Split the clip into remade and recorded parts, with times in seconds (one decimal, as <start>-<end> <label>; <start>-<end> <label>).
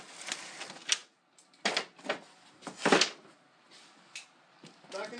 0.0-5.2 recorded